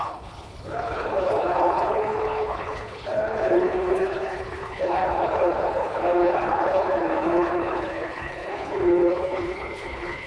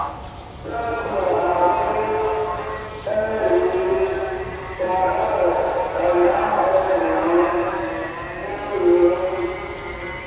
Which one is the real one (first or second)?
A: second